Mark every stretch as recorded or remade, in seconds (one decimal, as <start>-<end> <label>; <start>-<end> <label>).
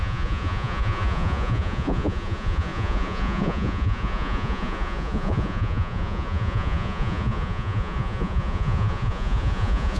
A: 0.0-10.0 remade